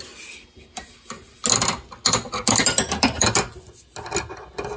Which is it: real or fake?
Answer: real